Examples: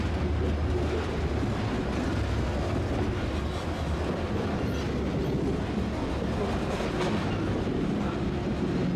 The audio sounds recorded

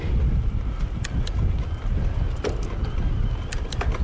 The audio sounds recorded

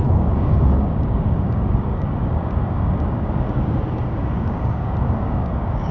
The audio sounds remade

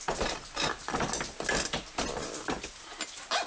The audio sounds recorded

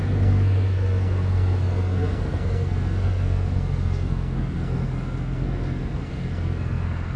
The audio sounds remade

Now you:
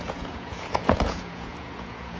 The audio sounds remade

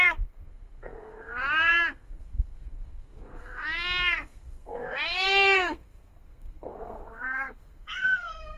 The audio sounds remade